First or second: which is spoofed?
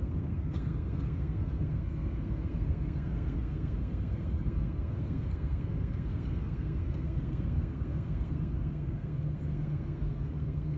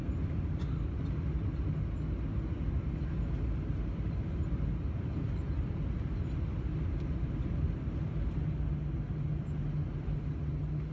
first